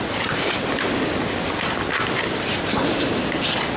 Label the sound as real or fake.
real